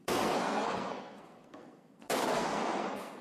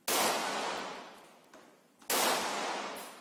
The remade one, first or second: first